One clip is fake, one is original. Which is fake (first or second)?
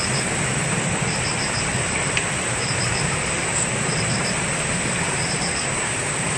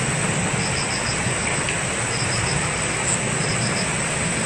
first